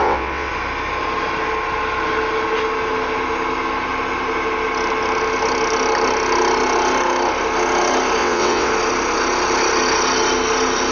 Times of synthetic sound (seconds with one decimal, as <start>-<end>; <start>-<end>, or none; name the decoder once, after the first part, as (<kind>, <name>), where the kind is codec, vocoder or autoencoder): 0.0-0.5 (vocoder, WaveNeXt); 8.2-8.7